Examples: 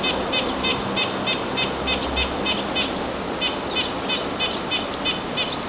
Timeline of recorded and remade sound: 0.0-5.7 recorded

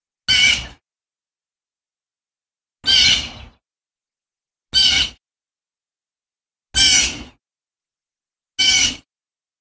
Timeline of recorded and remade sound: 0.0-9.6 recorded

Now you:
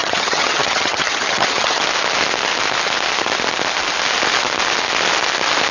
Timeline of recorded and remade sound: 0.0-1.8 remade; 1.8-5.7 recorded